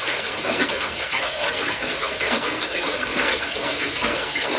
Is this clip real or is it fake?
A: fake